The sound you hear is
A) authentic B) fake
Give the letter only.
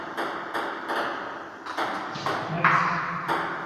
A